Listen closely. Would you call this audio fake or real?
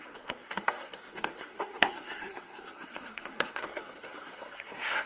fake